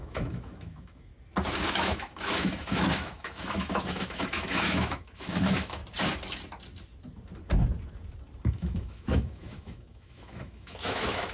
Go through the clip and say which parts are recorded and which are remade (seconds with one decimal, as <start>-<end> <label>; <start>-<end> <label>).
0.0-1.1 remade; 1.1-1.7 recorded; 1.7-5.8 remade; 5.8-8.5 recorded; 8.5-11.3 remade